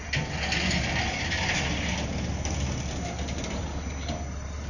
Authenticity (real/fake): real